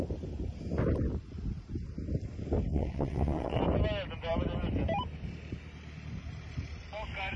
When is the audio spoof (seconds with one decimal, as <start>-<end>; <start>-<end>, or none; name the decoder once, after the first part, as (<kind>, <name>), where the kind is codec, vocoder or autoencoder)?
2.7-3.6 (vocoder, WaveNeXt)